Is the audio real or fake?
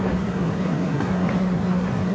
fake